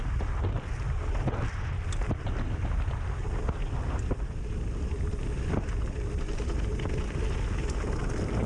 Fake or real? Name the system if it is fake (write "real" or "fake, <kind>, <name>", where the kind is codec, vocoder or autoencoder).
real